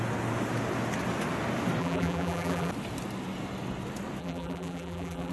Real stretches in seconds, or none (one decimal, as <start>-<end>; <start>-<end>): 0.0-1.8; 2.7-4.2